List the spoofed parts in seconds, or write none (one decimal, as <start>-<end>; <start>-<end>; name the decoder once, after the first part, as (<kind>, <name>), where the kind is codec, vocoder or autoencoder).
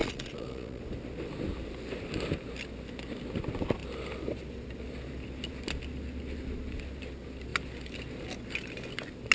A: 0.0-0.8 (vocoder, Vocos)